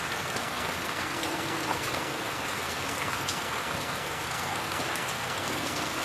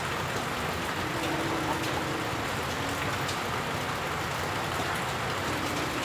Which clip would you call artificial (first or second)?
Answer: first